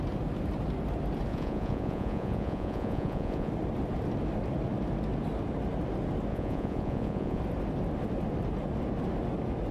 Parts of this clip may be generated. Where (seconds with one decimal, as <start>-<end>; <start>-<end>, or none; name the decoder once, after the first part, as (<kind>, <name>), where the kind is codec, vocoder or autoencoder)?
1.3-3.5 (vocoder, Vocos); 6.3-7.4